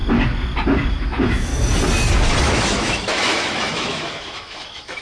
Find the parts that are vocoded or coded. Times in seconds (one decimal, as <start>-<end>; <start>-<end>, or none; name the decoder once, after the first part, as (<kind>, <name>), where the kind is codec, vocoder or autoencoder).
0.9-1.5 (autoencoder, DAC-VAE); 2.4-5.0